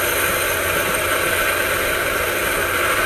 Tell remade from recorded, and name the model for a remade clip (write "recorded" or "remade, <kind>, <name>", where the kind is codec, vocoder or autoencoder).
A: recorded